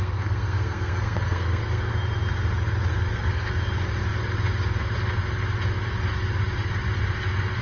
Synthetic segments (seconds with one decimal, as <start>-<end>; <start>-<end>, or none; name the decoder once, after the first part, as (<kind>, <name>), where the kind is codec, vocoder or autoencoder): 0.0-1.9 (codec, SNAC); 2.9-3.5